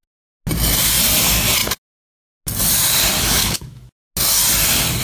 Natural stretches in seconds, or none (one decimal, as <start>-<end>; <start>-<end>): 0.0-3.4; 3.9-5.0